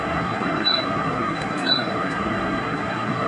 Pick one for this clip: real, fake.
fake